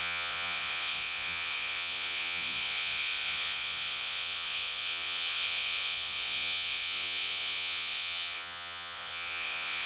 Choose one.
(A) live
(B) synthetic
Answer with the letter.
B